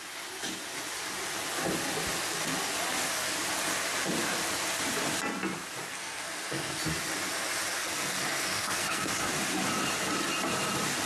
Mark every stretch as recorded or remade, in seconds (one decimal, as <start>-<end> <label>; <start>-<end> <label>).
0.0-5.9 recorded; 5.9-6.8 remade; 6.8-7.8 recorded; 7.8-9.1 remade; 9.1-11.1 recorded

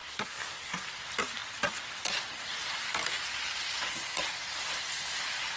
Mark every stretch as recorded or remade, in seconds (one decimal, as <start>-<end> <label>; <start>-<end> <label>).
0.0-0.8 remade; 0.8-5.6 recorded

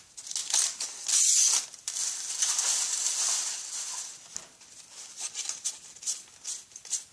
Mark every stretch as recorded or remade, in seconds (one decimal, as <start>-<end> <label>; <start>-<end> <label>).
0.0-7.1 recorded

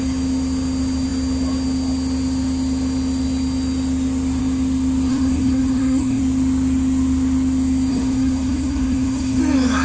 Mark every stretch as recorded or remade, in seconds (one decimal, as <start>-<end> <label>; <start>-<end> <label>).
0.0-5.1 recorded; 5.1-6.2 remade; 6.2-7.9 recorded; 7.9-9.4 remade; 9.4-9.8 recorded

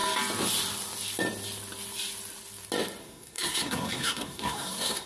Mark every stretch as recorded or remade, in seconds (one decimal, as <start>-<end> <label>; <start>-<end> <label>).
0.0-3.0 recorded; 3.0-5.1 remade

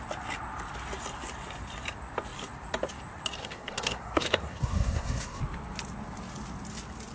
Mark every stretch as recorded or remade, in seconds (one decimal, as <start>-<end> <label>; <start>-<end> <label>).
0.0-3.4 recorded; 3.4-5.4 remade; 5.4-7.1 recorded